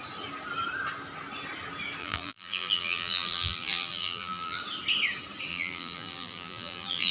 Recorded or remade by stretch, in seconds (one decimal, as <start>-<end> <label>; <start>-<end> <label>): 0.0-2.0 recorded; 2.0-4.6 remade; 4.6-5.5 recorded; 5.5-7.1 remade